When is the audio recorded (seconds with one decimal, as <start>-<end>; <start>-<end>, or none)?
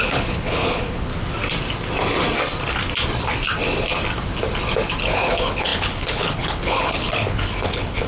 1.1-5.0